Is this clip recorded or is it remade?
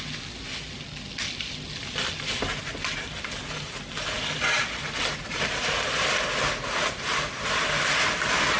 recorded